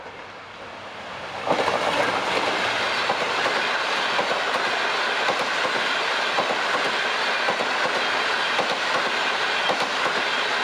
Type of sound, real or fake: real